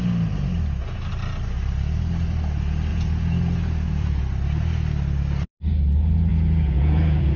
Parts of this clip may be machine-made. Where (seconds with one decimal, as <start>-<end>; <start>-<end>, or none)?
2.9-4.2; 6.3-7.4